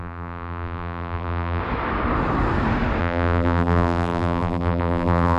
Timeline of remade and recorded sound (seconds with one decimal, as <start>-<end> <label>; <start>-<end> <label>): 0.0-1.6 remade; 1.6-3.0 recorded; 3.0-5.4 remade